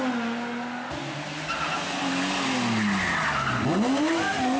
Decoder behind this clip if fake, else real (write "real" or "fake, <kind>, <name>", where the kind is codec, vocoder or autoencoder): real